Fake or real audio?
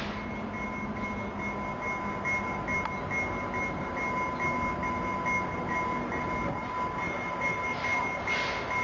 real